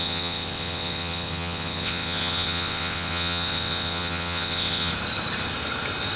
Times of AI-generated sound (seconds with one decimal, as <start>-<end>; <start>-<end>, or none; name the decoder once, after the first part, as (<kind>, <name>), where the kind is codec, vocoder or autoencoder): 0.0-4.9 (vocoder, WaveNeXt)